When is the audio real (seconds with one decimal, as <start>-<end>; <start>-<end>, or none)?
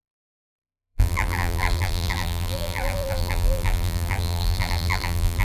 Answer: none